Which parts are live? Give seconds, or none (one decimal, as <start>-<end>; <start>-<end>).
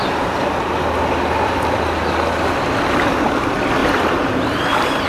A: 0.0-3.8